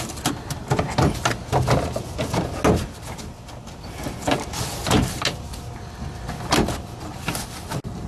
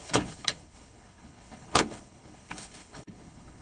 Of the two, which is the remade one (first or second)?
second